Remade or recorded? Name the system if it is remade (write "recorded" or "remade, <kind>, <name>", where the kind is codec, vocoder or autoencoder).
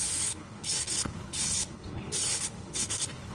remade, codec, HILCodec